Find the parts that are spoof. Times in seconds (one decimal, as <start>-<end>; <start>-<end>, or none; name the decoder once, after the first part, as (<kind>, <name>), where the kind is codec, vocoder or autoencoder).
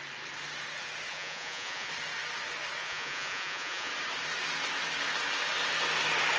1.1-1.9 (vocoder, Vocos); 2.8-3.9